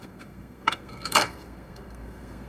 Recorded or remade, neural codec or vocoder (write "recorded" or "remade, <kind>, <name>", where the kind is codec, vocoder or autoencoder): remade, codec, SNAC